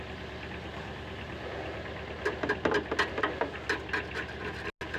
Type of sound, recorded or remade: recorded